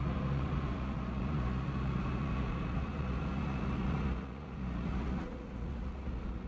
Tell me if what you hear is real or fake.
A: fake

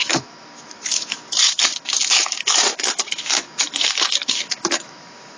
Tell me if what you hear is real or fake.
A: fake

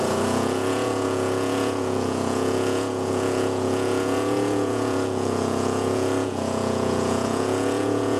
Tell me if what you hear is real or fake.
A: fake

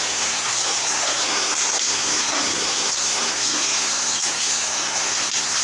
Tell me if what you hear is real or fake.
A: fake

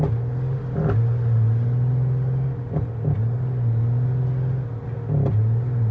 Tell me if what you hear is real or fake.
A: real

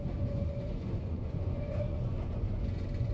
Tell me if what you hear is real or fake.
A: fake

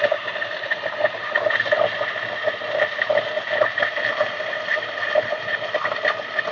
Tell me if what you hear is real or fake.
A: real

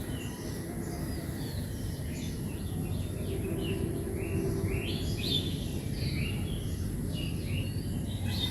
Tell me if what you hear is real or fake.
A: real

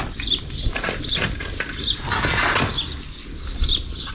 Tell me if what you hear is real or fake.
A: real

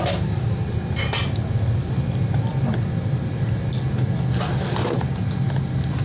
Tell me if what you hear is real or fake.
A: real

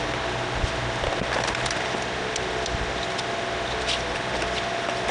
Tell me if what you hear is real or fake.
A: real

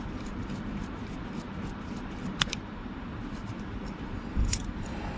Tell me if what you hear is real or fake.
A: fake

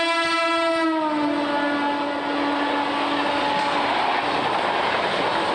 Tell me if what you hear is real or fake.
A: real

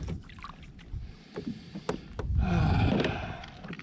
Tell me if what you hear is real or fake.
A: real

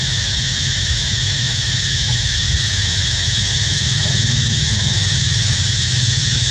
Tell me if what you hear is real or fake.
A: fake